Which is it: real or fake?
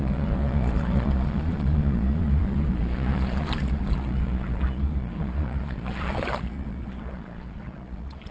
fake